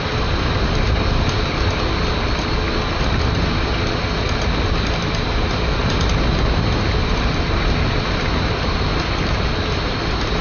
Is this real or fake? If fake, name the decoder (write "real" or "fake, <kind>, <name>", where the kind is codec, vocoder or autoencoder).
real